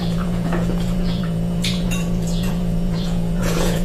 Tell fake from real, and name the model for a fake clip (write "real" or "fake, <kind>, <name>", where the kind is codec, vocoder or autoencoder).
fake, vocoder, Vocos